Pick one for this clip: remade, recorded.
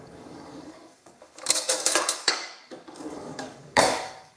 remade